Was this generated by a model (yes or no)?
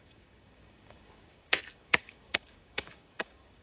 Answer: yes